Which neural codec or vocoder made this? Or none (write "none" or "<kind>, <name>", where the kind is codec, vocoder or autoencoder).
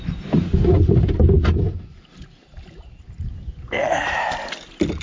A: none